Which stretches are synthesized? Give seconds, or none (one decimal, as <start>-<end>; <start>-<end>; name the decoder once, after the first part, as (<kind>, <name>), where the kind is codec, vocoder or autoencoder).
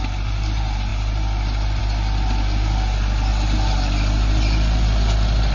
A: none